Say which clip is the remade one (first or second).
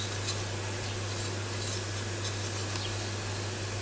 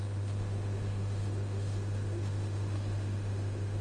second